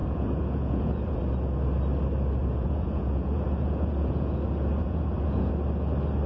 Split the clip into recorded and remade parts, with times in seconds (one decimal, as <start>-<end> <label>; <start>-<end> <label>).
0.0-1.2 remade; 1.2-2.4 recorded; 2.4-4.3 remade; 4.3-4.8 recorded; 4.8-5.5 remade; 5.5-6.3 recorded